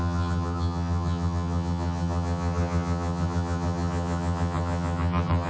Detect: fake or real fake